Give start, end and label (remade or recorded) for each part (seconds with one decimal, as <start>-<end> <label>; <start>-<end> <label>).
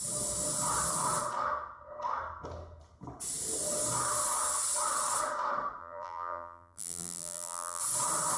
0.0-5.8 recorded; 5.8-7.8 remade; 7.8-8.4 recorded